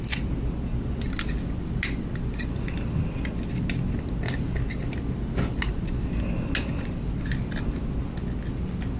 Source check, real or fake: real